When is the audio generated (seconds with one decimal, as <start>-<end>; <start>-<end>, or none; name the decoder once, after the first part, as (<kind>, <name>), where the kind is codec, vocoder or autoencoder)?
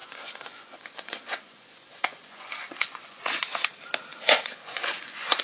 0.0-3.2 (vocoder, Vocos); 4.1-5.4